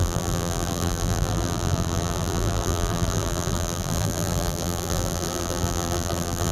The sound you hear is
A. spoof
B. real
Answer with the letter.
A